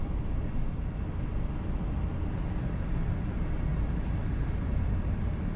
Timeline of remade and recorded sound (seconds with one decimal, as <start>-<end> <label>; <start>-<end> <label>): 0.0-5.6 recorded